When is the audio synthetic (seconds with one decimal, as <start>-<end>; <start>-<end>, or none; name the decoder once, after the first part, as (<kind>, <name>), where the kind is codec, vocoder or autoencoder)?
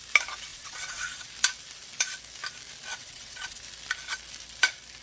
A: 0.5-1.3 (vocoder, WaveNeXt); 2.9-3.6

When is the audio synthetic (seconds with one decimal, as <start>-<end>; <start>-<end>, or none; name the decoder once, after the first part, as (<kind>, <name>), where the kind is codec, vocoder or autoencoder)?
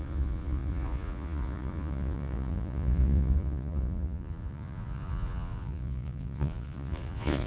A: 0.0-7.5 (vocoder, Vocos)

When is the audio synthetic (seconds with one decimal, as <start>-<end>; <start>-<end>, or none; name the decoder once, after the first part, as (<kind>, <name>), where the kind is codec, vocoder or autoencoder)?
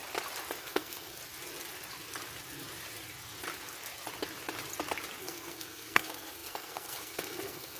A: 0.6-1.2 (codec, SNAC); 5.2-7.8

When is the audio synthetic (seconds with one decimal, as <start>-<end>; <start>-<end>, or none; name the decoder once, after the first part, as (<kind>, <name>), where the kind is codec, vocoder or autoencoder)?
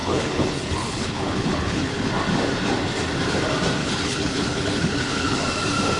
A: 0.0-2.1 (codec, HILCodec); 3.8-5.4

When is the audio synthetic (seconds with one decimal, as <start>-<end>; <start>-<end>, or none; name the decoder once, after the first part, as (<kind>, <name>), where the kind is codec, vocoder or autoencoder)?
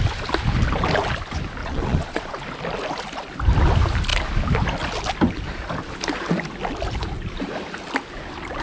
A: 1.6-2.3 (vocoder, Vocos)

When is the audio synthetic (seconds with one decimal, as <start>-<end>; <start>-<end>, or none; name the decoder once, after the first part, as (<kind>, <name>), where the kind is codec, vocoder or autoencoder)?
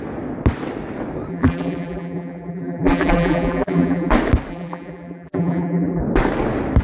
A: 1.3-4.1 (vocoder, BigVGAN v2); 4.5-6.0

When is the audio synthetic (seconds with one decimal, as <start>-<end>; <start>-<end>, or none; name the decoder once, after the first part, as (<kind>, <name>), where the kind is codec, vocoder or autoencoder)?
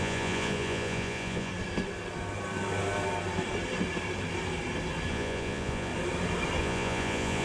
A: 0.0-1.5 (vocoder, Vocos); 5.1-5.9; 6.6-7.4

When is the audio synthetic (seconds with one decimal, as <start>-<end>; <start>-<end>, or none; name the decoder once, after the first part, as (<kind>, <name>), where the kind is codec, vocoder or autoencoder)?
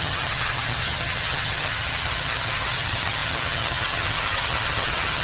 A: 0.0-5.2 (vocoder, HiFi-GAN)